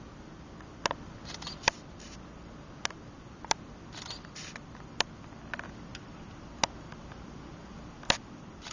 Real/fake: real